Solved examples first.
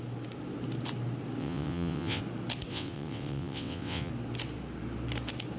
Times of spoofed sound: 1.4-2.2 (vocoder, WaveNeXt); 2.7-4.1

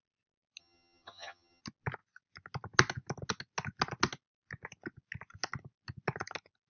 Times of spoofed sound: 0.6-1.6 (vocoder, HiFi-GAN)

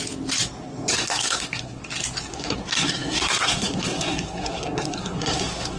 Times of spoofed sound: 0.9-1.8 (codec, SNAC); 2.3-5.8